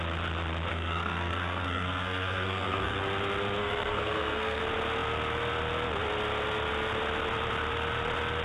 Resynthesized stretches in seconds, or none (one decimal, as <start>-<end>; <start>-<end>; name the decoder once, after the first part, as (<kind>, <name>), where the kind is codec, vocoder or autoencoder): 0.7-3.0 (codec, SNAC); 3.6-4.6